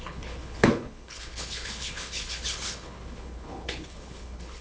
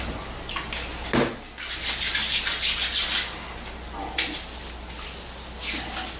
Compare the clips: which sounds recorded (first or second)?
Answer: second